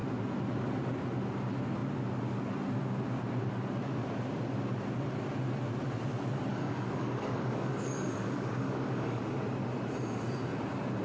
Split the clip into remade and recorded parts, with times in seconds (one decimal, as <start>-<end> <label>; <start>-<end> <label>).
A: 0.0-6.5 recorded; 6.5-9.2 remade; 9.2-11.0 recorded